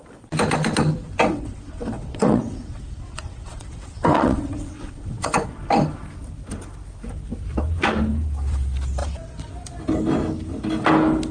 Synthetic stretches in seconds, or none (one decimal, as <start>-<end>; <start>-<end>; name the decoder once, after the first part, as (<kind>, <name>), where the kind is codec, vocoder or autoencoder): 1.3-5.6 (vocoder, WaveNeXt); 9.0-9.5